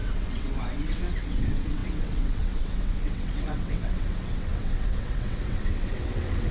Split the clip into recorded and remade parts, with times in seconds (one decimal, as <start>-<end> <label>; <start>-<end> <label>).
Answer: 0.0-6.5 remade